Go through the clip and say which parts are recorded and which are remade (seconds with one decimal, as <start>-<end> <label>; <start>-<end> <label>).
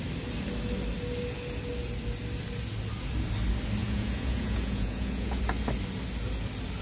0.0-3.8 recorded; 3.8-5.4 remade; 5.4-6.8 recorded